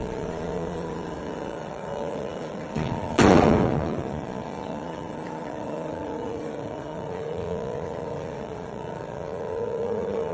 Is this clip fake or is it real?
fake